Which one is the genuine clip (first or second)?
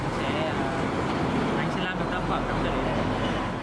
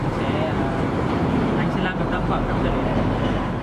first